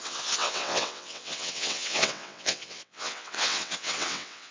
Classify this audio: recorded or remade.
remade